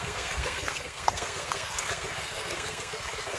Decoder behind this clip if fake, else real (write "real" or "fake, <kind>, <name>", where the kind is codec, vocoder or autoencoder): fake, codec, SNAC